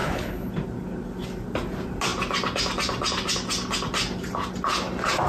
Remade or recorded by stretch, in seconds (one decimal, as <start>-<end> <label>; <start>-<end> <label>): 0.0-0.5 remade; 0.5-5.3 recorded